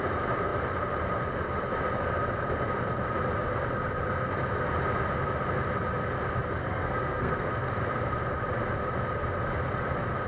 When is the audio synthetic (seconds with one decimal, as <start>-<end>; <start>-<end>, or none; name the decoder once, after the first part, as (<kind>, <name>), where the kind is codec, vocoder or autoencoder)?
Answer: 6.6-7.5 (codec, SNAC)